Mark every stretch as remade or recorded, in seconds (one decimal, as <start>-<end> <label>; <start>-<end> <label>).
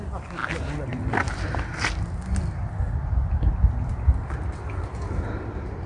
0.0-5.9 recorded